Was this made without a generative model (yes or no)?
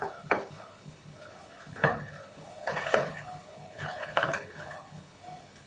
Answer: no